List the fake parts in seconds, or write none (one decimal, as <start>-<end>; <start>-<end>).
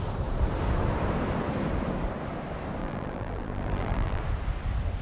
2.8-4.2